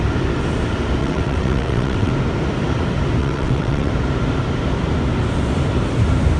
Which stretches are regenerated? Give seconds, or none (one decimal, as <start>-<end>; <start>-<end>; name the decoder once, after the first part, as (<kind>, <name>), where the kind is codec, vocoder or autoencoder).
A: 1.0-2.1 (vocoder, WaveNeXt); 3.2-3.9